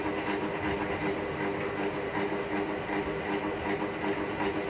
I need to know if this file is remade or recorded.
recorded